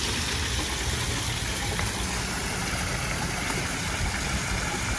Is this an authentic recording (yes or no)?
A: yes